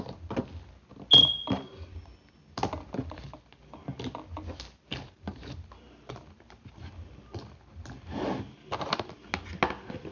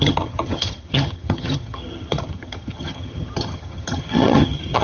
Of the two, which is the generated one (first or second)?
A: second